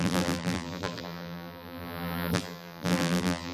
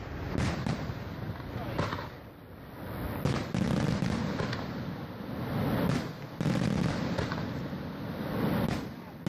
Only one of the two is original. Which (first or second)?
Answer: second